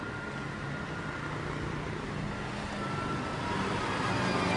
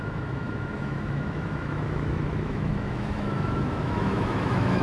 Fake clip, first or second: second